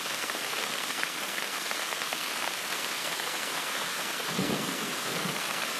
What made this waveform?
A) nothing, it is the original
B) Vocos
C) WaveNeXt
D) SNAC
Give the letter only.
D